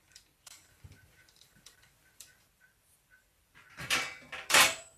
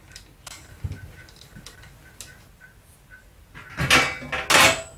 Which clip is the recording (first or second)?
second